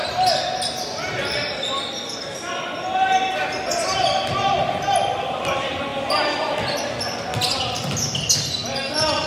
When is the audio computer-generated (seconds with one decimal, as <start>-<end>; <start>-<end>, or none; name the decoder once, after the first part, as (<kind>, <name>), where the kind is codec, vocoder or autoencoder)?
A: none

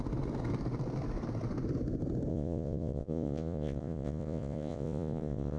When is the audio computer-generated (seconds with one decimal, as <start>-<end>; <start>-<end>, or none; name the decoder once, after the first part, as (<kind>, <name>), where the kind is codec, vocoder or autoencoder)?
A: 2.3-5.6 (vocoder, Vocos)